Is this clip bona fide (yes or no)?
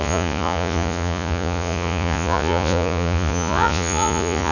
no